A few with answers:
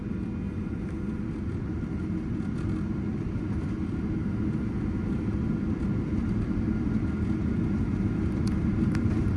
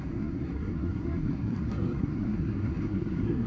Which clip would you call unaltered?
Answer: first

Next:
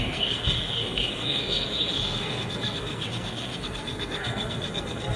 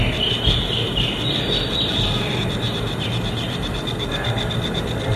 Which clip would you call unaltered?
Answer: second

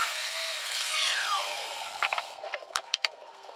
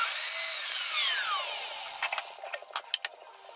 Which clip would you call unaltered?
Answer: second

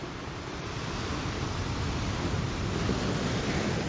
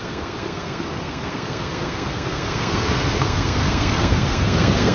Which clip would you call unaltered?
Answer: first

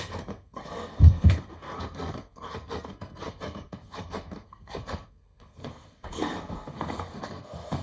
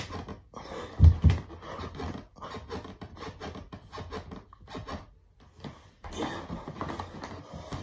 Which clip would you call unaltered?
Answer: second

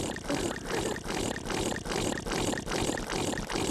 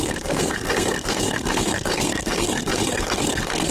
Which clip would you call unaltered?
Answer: first